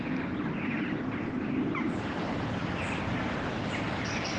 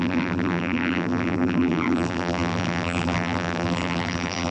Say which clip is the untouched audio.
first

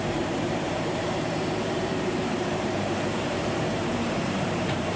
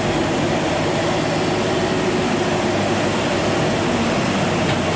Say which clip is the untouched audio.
second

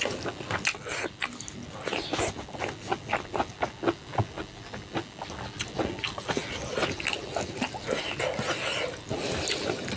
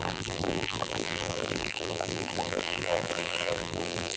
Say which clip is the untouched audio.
first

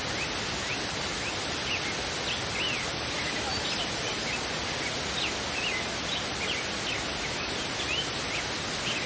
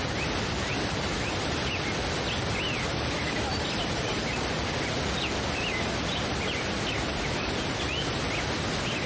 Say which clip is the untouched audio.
first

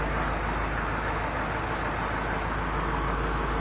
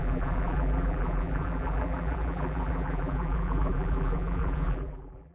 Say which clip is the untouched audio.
first